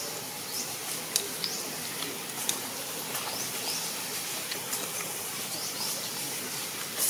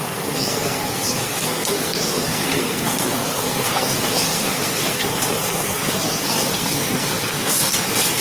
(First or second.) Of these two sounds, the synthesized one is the second